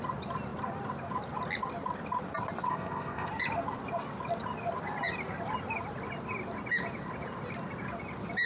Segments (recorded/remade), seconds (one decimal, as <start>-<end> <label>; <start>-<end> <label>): 0.0-2.7 recorded; 2.7-3.3 remade; 3.3-8.5 recorded